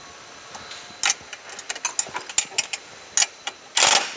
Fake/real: real